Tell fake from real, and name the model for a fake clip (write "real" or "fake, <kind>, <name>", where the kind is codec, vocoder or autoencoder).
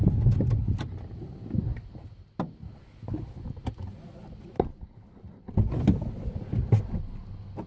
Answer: real